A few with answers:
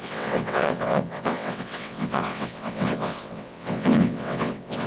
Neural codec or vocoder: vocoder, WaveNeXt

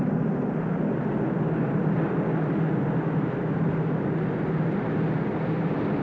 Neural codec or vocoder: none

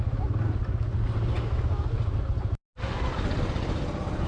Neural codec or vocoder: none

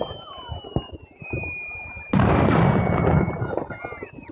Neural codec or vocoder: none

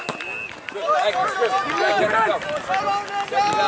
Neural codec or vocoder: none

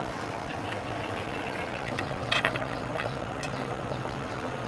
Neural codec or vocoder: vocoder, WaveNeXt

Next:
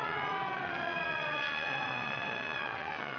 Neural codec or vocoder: vocoder, WaveNeXt